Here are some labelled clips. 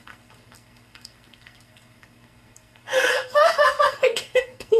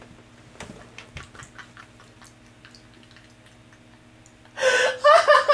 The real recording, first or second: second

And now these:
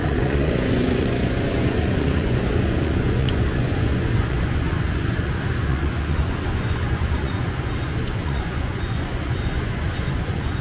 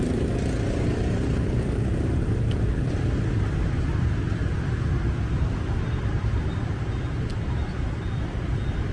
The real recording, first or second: second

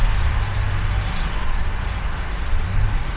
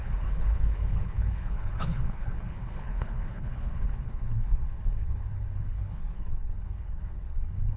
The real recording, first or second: first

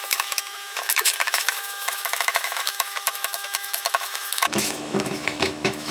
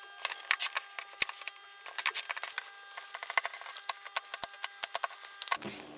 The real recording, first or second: second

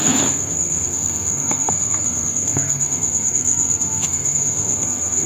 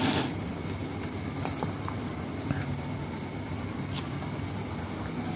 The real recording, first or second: second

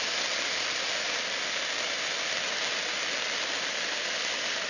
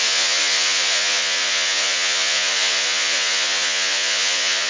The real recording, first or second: first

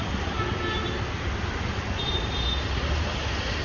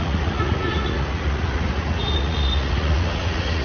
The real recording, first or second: first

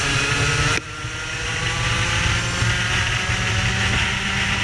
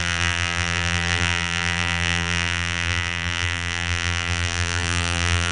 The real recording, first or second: first